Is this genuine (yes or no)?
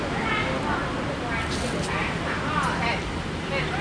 yes